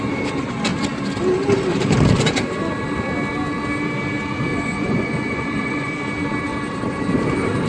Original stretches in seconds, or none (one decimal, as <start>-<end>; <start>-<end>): 0.0-4.5; 5.9-7.7